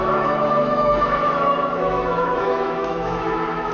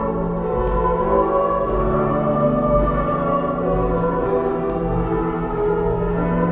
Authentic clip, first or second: second